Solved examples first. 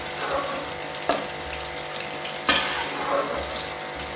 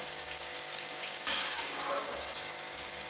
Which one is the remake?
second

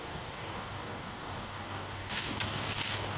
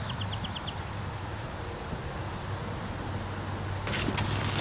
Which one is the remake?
first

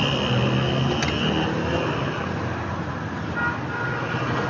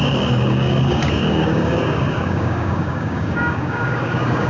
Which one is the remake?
second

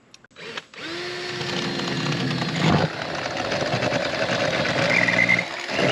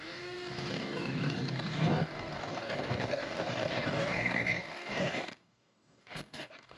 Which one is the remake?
second